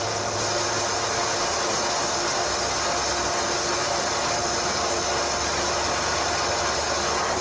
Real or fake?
real